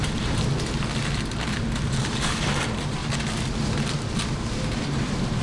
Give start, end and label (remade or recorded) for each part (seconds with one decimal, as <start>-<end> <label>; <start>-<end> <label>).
0.0-0.5 remade; 0.5-1.6 recorded; 1.6-3.0 remade; 3.0-4.8 recorded; 4.8-5.4 remade